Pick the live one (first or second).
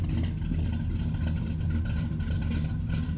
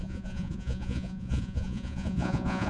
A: first